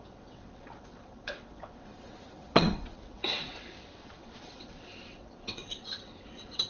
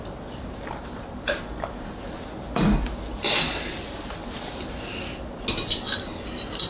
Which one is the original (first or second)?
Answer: second